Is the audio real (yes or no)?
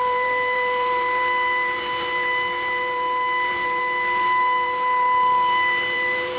no